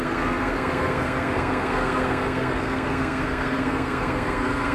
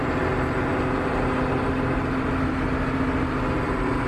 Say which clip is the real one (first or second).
second